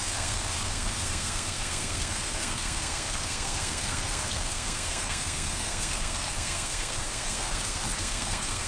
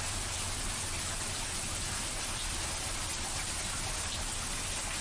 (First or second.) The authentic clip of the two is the second